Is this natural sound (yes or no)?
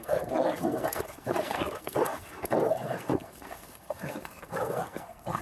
no